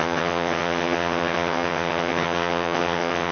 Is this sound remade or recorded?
remade